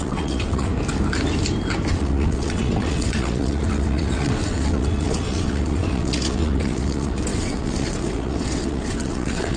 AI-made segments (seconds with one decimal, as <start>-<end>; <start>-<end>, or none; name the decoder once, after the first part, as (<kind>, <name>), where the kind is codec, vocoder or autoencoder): 0.0-0.7 (vocoder, WaveNeXt); 1.9-9.6